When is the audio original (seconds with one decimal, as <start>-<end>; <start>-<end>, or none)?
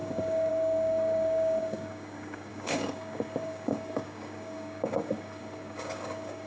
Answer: none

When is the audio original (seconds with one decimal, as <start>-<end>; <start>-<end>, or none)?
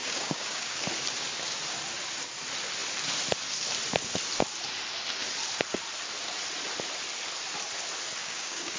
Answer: 0.8-8.2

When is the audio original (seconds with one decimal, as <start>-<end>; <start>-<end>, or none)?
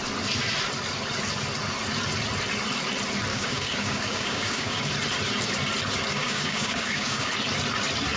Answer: 0.0-3.3; 4.8-6.1; 7.3-8.2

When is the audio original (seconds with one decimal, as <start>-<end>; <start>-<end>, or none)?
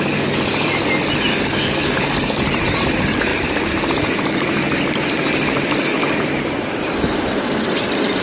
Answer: 0.0-1.3; 2.4-8.2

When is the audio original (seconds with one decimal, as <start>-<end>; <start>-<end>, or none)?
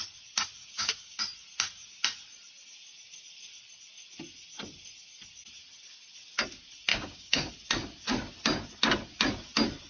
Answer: 0.0-0.6; 1.2-6.9; 7.5-9.9